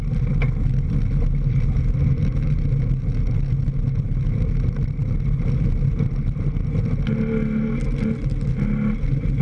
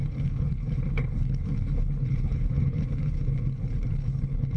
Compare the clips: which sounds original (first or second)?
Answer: first